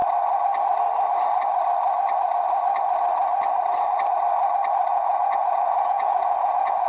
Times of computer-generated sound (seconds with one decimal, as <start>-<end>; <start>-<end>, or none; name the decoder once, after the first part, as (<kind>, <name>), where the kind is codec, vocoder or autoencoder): 4.9-6.9 (vocoder, Vocos)